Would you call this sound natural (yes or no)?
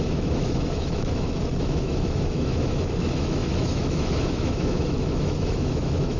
no